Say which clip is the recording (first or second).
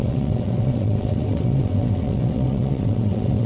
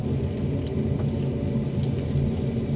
second